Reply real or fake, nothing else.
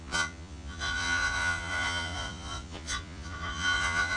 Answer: fake